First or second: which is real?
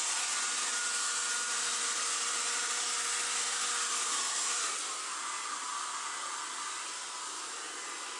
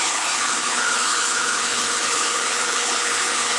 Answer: first